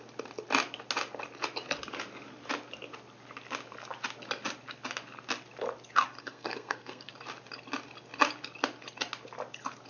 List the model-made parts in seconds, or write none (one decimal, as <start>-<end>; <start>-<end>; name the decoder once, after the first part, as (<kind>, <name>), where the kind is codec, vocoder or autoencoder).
6.2-7.1 (codec, SNAC)